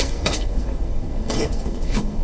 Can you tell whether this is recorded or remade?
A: remade